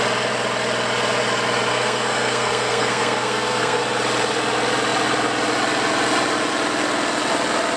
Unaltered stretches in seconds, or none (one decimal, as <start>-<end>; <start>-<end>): 0.0-1.7; 3.8-7.8